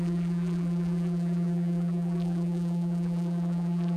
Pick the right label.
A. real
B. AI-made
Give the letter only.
B